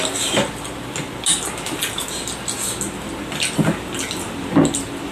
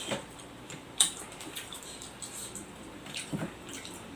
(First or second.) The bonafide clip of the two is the first